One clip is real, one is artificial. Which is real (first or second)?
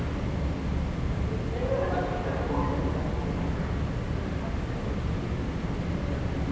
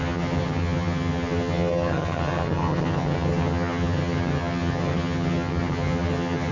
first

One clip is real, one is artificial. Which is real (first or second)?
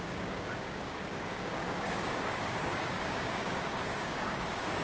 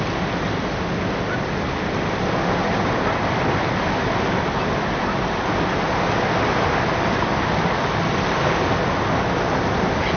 second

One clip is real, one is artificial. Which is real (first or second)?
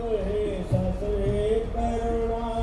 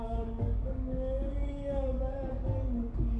first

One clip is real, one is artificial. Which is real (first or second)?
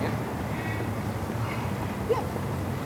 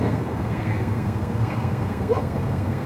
first